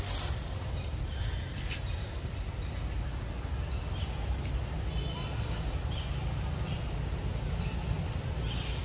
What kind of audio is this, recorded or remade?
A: recorded